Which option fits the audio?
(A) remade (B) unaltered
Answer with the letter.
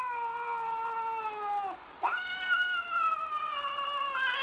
B